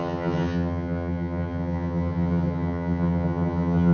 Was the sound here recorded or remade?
remade